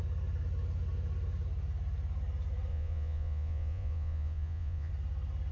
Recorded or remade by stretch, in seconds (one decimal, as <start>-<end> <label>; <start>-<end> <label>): 0.0-2.7 recorded; 2.7-4.9 remade; 4.9-5.5 recorded